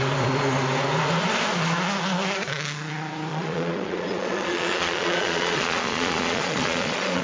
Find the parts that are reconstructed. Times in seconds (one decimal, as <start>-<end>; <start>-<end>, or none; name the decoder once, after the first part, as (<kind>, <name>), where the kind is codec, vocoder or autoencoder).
3.3-7.2 (vocoder, Vocos)